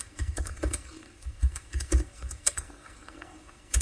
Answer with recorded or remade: remade